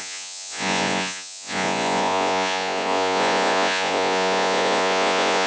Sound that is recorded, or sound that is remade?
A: remade